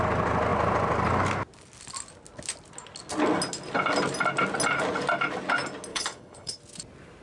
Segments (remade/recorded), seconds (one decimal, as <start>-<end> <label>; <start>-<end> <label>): 0.0-5.9 recorded; 5.9-6.6 remade; 6.6-7.2 recorded